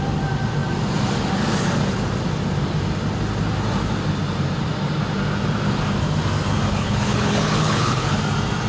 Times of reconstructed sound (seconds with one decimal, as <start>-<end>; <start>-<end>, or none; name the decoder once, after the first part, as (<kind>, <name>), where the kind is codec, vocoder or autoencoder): 6.7-8.2 (codec, HILCodec)